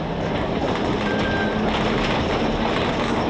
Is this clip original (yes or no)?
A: yes